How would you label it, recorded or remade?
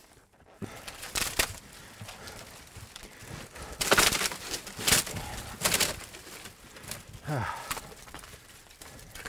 recorded